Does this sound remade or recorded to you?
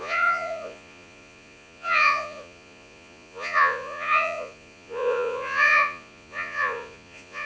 remade